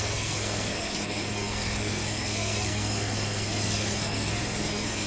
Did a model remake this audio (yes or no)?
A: yes